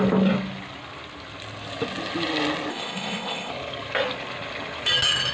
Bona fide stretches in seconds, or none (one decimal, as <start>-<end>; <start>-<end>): 0.0-2.7; 3.5-5.3